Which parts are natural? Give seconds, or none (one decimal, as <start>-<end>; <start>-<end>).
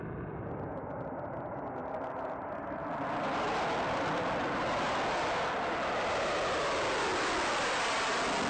0.0-8.5